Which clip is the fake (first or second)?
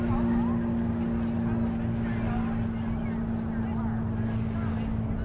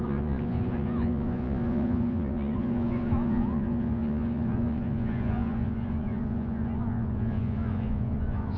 second